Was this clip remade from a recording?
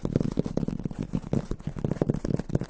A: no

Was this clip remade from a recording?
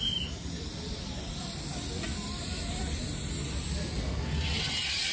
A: no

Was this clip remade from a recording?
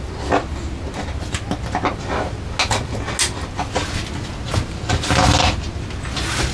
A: no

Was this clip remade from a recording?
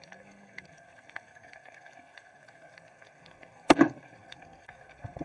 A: yes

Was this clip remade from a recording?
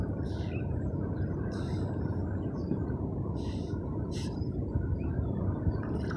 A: yes